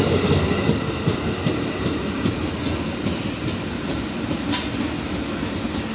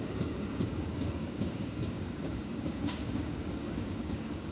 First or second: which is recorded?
first